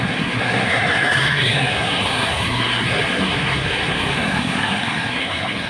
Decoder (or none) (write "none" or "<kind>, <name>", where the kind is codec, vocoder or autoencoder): codec, SNAC